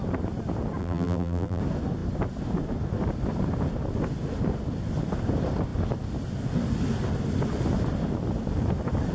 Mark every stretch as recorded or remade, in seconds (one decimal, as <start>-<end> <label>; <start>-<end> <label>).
0.0-0.8 recorded; 0.8-1.6 remade; 1.6-9.1 recorded